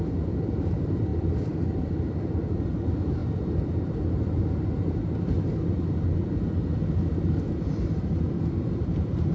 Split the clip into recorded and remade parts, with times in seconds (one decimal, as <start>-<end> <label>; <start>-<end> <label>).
0.0-9.3 recorded